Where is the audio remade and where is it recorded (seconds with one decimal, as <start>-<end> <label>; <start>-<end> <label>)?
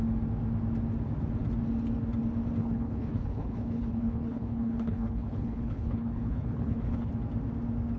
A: 0.0-2.6 recorded; 2.6-7.1 remade; 7.1-8.0 recorded